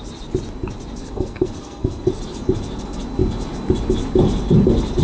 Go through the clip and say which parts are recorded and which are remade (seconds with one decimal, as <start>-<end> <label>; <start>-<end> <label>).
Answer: 0.0-1.0 recorded; 1.0-2.2 remade; 2.2-5.0 recorded